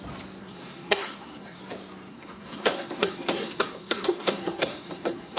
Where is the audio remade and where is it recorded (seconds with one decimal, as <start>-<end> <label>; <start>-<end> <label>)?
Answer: 0.0-0.4 recorded; 0.4-1.6 remade; 1.6-2.1 recorded; 2.1-5.4 remade